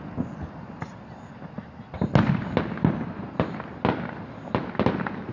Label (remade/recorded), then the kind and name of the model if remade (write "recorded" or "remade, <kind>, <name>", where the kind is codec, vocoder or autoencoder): recorded